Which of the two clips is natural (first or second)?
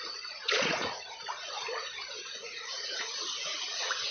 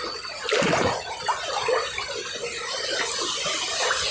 second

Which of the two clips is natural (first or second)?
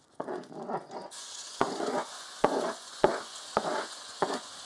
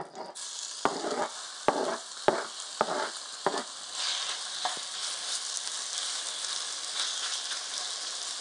second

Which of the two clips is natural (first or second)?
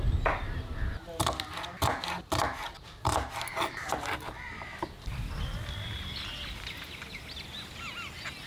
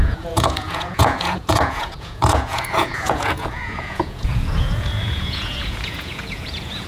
first